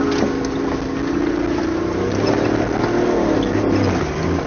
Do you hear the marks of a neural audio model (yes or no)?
no